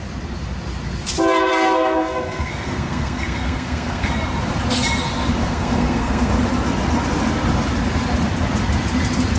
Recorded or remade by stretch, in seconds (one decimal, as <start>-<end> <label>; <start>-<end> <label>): 0.0-1.5 recorded; 1.5-4.1 remade; 4.1-5.4 recorded; 5.4-6.3 remade; 6.3-9.4 recorded